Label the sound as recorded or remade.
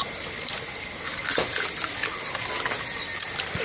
recorded